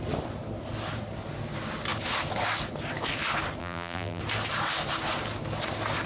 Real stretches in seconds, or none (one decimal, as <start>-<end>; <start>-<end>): 0.0-3.6; 4.2-6.1